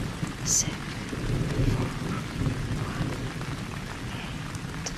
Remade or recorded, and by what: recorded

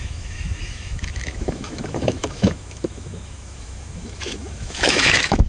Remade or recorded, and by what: remade, autoencoder, DAC-VAE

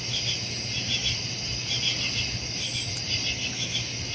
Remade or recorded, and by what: recorded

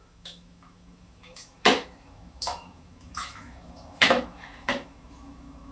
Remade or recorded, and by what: remade, autoencoder, DAC-VAE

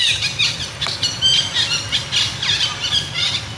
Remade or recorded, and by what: recorded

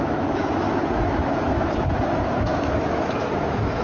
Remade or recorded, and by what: remade, autoencoder, DAC-VAE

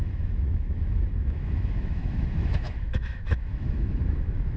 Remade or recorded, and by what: remade, autoencoder, DAC-VAE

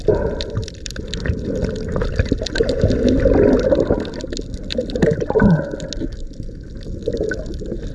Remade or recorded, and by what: recorded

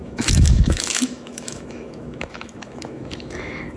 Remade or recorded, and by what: remade, autoencoder, DAC-VAE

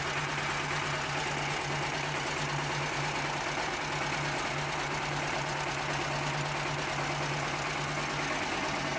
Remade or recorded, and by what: recorded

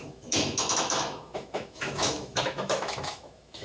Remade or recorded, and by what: remade, autoencoder, DAC-VAE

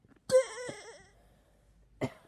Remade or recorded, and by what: recorded